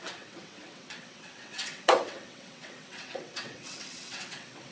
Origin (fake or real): fake